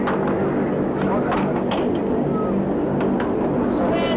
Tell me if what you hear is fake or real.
real